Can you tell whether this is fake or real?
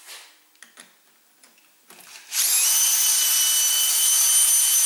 real